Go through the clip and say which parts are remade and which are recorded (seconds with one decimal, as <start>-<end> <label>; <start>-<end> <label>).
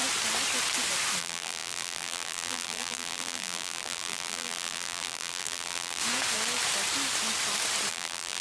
0.0-1.2 recorded; 1.2-6.0 remade; 6.0-7.9 recorded; 7.9-8.4 remade